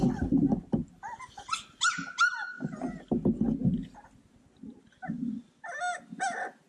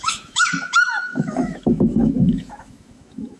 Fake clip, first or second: second